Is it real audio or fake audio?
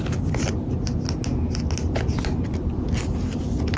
real